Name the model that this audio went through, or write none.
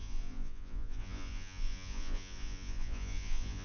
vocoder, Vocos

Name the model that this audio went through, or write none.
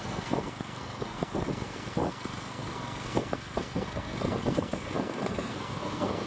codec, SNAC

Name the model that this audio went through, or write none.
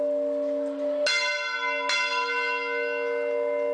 none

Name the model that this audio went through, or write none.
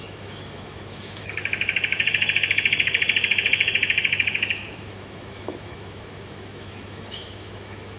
autoencoder, DAC-VAE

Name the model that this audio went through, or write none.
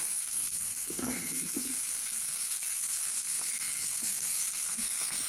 codec, SNAC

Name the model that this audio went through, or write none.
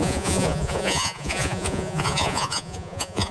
vocoder, Vocos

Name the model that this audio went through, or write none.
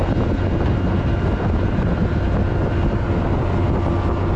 none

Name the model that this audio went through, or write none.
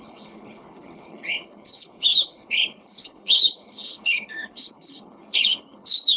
codec, HILCodec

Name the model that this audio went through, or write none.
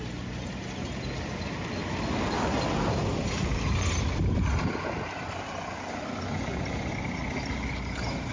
none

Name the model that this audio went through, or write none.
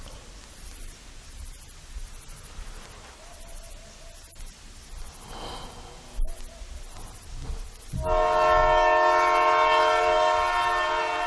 none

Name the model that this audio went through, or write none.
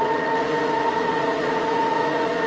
vocoder, Vocos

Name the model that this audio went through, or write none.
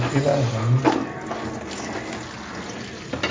none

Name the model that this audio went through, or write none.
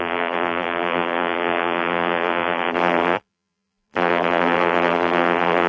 vocoder, BigVGAN v2